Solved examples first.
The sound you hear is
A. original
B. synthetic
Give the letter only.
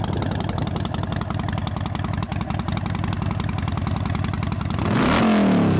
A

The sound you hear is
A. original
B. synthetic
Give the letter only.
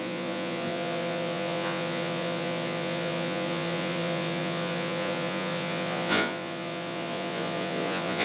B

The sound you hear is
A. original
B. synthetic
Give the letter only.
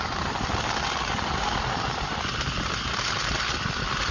A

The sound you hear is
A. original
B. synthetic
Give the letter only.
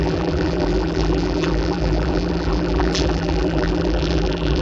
B